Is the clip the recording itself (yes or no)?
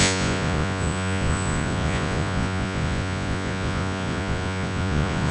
no